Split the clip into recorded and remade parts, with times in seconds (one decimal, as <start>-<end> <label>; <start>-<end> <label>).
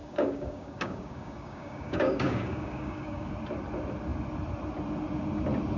0.0-3.3 remade; 3.3-5.8 recorded